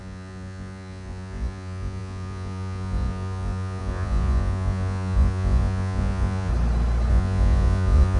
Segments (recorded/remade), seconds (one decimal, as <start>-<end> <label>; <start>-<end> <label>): 0.0-6.5 remade; 6.5-7.1 recorded; 7.1-8.2 remade